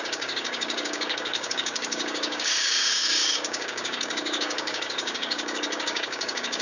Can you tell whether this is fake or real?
fake